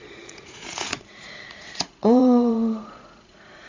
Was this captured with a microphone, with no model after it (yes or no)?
no